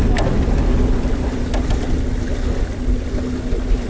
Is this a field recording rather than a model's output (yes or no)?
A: yes